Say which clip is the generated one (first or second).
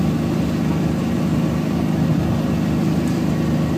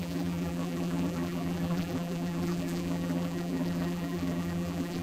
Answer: second